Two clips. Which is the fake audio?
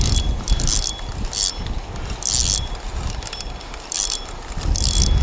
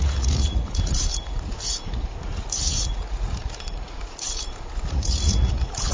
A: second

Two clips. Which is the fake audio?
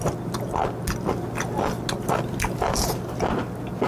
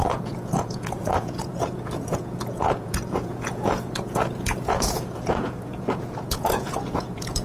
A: second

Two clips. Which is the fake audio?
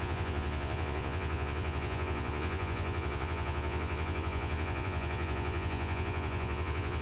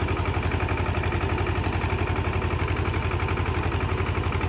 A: first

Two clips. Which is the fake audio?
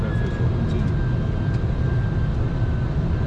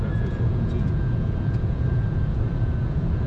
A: second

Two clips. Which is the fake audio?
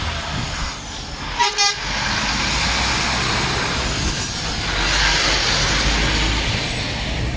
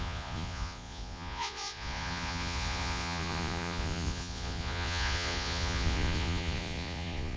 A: second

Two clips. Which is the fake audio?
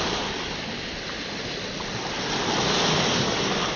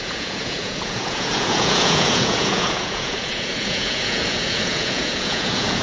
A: second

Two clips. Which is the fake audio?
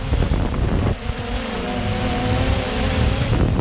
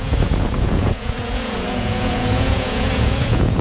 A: second